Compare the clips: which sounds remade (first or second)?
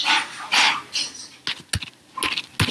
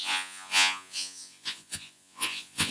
second